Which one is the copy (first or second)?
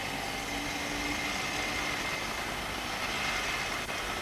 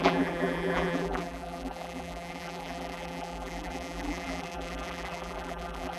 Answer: second